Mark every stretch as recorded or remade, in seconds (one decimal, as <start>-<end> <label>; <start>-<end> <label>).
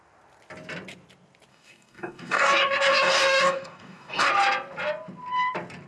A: 0.0-1.5 recorded; 1.5-4.3 remade; 4.3-5.9 recorded